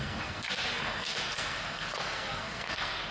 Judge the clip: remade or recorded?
remade